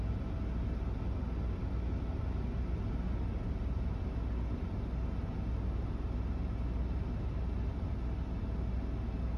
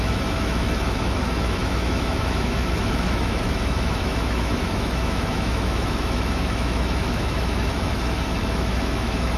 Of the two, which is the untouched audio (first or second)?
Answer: first